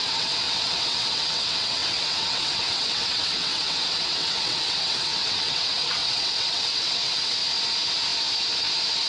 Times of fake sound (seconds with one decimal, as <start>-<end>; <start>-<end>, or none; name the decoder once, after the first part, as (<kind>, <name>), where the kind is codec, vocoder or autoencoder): 0.0-7.4 (vocoder, WaveNeXt)

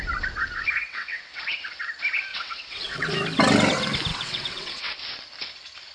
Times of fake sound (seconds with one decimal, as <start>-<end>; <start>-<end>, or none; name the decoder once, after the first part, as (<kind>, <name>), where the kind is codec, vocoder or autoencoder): 0.8-1.4 (vocoder, WaveNeXt); 2.3-3.1; 4.1-5.0

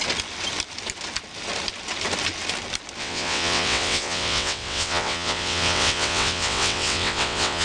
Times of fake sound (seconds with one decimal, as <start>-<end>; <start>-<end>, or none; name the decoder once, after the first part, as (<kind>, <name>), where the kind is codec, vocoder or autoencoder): 3.0-7.6 (vocoder, WaveNeXt)

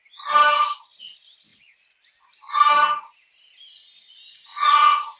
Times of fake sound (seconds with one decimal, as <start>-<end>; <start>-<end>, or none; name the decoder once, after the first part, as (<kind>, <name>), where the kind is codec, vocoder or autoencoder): 4.5-5.2 (vocoder, WaveNeXt)

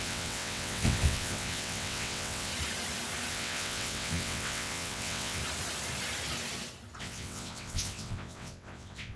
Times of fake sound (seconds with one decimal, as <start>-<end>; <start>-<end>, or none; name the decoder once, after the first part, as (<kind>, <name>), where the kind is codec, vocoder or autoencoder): 0.0-2.5 (vocoder, WaveNeXt); 3.3-5.4; 7.0-9.2